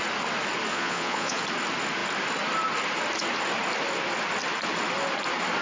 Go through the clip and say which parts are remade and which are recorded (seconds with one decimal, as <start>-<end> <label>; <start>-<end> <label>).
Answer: 0.0-0.7 recorded; 0.7-1.4 remade; 1.4-5.6 recorded